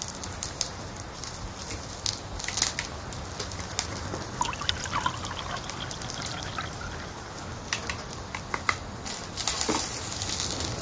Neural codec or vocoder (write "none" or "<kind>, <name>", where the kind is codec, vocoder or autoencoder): none